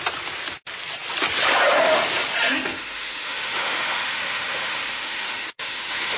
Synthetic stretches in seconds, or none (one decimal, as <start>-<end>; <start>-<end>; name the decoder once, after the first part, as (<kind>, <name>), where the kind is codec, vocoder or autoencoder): 2.5-6.2 (autoencoder, DAC-VAE)